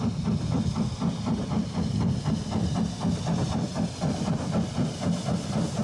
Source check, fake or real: real